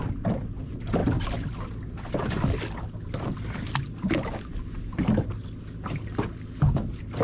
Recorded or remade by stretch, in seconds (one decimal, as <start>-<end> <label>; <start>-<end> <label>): 0.0-1.0 recorded; 1.0-2.6 remade; 2.6-7.2 recorded